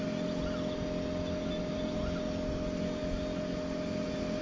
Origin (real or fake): real